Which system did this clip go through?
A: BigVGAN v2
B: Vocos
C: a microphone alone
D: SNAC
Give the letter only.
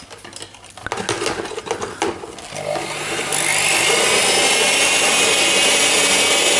C